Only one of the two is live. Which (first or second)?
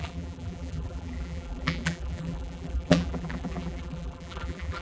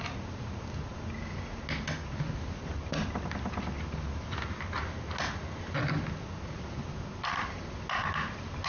second